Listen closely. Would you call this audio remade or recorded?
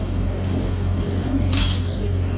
remade